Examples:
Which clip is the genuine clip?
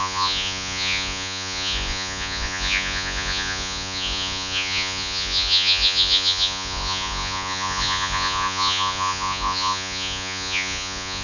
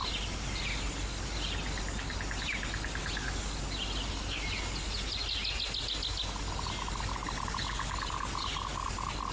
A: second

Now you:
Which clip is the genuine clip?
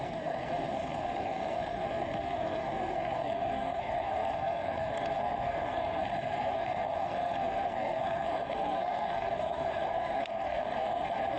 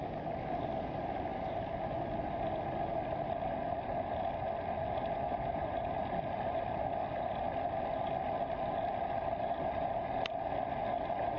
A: second